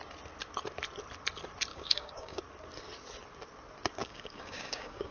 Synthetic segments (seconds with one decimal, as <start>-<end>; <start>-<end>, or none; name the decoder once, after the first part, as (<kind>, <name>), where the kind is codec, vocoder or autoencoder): 1.7-2.4 (codec, DAC); 4.0-5.1